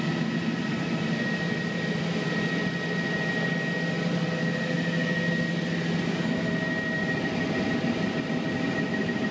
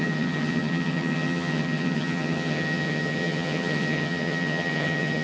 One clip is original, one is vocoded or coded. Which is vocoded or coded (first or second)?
second